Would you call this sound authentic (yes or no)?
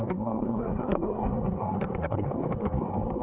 no